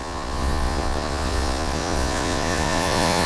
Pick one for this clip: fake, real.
fake